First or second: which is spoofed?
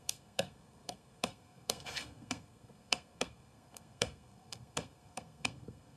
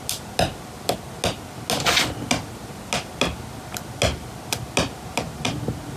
first